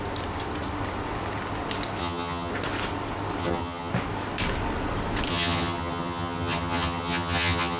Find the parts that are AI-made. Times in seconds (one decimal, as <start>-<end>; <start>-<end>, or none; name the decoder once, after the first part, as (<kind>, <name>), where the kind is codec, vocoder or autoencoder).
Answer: 2.0-2.5 (vocoder, HiFi-GAN); 3.4-3.9; 5.3-7.8